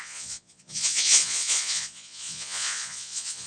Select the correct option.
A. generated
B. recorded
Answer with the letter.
A